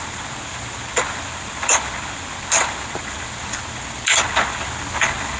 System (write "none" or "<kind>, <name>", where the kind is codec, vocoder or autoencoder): none